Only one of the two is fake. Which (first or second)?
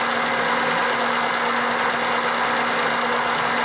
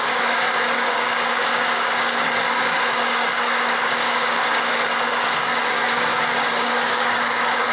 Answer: second